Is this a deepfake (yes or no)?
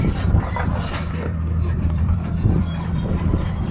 yes